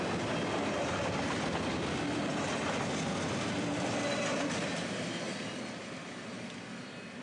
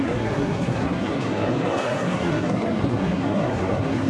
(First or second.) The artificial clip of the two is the second